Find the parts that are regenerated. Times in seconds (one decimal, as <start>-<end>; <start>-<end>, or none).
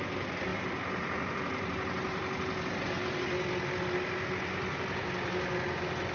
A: none